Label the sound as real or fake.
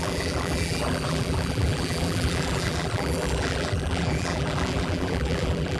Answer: fake